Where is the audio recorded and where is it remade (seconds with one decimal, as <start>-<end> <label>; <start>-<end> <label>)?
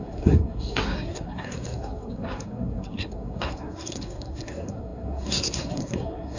0.0-6.4 remade